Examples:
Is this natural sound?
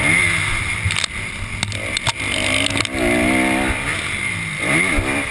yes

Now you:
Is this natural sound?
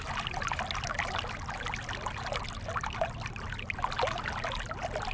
yes